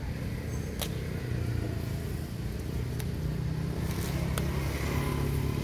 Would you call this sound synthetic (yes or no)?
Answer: no